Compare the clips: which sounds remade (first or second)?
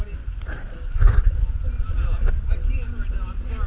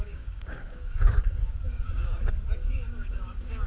second